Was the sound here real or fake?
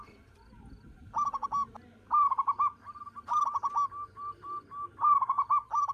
real